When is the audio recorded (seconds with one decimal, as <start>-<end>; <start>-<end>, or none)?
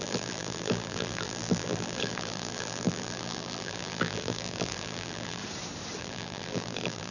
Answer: 5.4-6.0